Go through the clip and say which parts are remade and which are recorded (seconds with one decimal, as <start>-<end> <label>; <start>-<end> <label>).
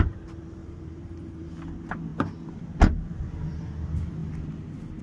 0.0-0.6 recorded; 0.6-1.5 remade; 1.5-5.0 recorded